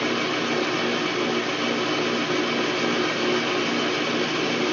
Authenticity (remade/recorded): recorded